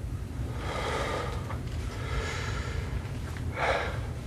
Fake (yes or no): yes